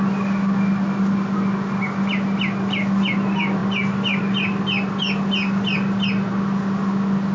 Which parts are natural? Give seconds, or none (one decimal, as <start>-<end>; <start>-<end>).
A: 0.0-7.3